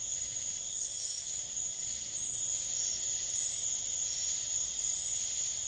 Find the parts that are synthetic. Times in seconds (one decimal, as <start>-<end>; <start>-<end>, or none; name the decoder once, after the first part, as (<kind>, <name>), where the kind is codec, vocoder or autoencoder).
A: 0.7-1.3 (codec, SNAC)